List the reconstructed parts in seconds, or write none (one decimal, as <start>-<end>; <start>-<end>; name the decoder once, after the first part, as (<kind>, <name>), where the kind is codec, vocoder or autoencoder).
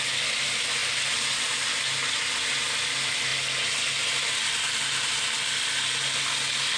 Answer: none